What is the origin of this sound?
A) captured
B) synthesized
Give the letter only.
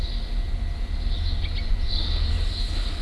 A